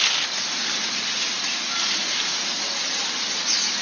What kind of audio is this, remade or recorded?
recorded